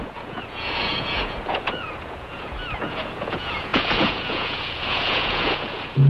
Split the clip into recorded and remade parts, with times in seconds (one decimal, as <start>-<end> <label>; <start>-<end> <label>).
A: 0.0-6.1 remade